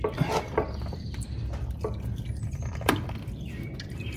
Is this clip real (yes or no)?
no